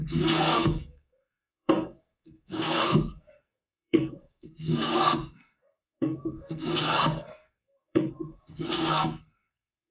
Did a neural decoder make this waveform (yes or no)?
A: yes